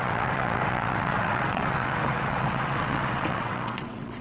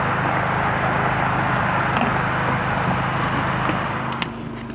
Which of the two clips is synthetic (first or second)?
first